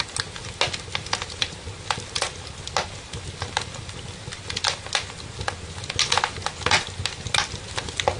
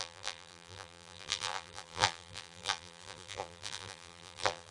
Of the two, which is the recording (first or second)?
first